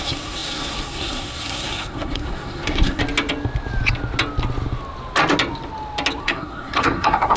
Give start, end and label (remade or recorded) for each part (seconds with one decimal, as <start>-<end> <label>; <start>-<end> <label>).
0.0-3.0 remade; 3.0-6.2 recorded; 6.2-7.4 remade

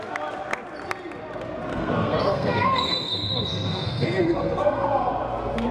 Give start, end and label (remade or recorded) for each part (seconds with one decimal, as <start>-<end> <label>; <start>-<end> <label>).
0.0-1.7 recorded; 1.7-5.1 remade; 5.1-5.7 recorded

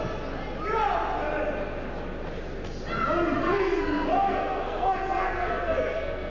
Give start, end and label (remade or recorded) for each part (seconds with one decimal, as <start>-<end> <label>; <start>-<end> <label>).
0.0-3.4 recorded; 3.4-6.3 remade

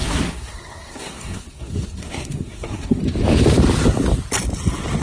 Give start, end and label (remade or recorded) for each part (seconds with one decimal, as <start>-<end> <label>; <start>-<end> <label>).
0.0-3.0 remade; 3.0-5.0 recorded

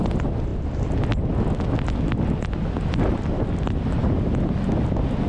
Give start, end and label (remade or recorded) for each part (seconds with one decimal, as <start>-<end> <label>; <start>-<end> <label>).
0.0-5.3 recorded

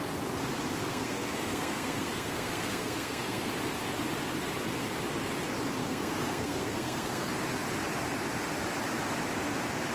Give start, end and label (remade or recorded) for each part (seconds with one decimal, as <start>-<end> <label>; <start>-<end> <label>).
0.0-0.8 recorded; 0.8-3.5 remade; 3.5-5.8 recorded; 5.8-7.3 remade; 7.3-9.9 recorded

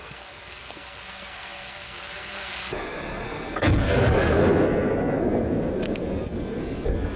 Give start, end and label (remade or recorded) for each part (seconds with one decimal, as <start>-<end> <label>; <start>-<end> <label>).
0.0-7.2 remade

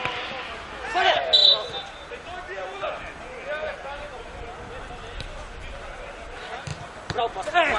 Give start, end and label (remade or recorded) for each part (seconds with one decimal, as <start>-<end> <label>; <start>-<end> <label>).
0.0-7.8 recorded